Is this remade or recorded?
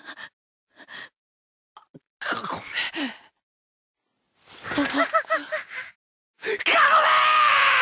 recorded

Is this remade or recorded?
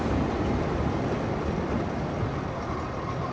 remade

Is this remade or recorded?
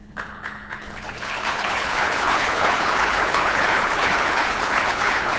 remade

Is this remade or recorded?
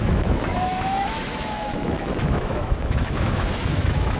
remade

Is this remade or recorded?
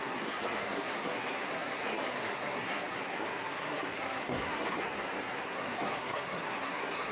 remade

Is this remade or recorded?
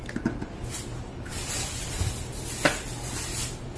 recorded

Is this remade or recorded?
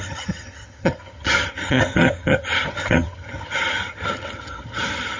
remade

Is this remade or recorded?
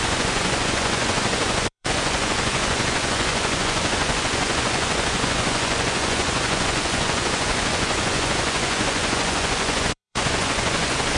remade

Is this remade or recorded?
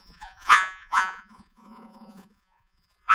remade